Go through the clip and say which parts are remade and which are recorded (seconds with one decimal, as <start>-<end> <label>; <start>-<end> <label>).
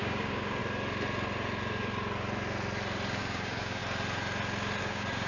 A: 0.0-0.6 remade; 0.6-3.2 recorded; 3.2-3.8 remade; 3.8-4.8 recorded; 4.8-5.3 remade